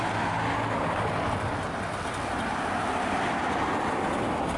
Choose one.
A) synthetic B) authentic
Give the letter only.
B